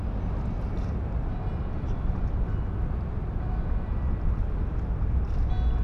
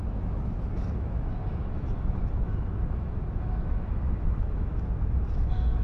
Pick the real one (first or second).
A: first